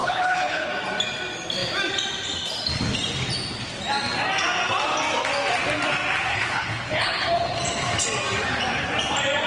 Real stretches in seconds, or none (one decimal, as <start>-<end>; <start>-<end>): 0.7-6.3; 7.6-9.5